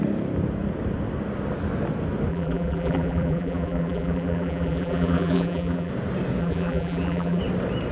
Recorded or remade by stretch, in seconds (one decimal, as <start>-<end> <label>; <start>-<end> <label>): 0.0-2.3 recorded; 2.3-5.9 remade; 5.9-6.4 recorded; 6.4-7.4 remade; 7.4-7.9 recorded